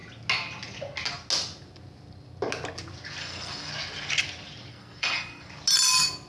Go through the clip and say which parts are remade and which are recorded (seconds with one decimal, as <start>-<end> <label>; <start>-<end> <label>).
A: 0.0-3.2 recorded; 3.2-3.7 remade; 3.7-4.7 recorded; 4.7-5.5 remade; 5.5-6.3 recorded